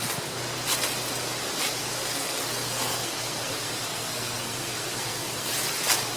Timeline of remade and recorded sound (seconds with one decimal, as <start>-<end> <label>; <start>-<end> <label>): 0.0-1.8 recorded; 1.8-5.5 remade; 5.5-6.2 recorded